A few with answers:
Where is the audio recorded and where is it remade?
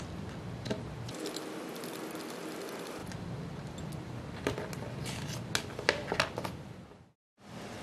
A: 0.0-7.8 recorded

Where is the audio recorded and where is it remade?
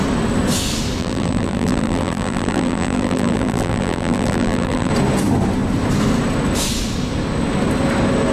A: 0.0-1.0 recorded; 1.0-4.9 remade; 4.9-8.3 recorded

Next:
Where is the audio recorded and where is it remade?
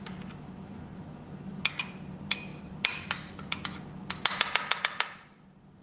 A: 0.0-2.5 recorded; 2.5-3.6 remade; 3.6-5.8 recorded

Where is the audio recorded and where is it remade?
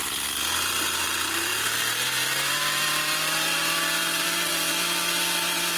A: 0.0-1.0 recorded; 1.0-5.8 remade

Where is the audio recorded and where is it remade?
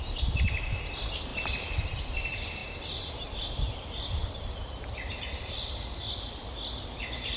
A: 0.0-1.3 recorded; 1.3-2.0 remade; 2.0-4.2 recorded; 4.2-6.1 remade; 6.1-7.4 recorded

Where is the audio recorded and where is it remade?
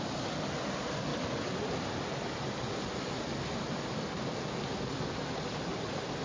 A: 0.0-6.2 recorded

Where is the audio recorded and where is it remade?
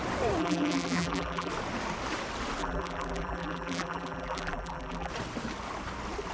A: 0.0-0.4 recorded; 0.4-1.5 remade; 1.5-2.6 recorded; 2.6-5.1 remade; 5.1-6.3 recorded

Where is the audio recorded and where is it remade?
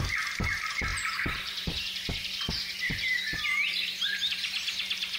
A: 0.0-5.2 remade